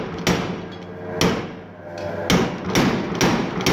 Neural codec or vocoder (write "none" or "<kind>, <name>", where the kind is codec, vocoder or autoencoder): none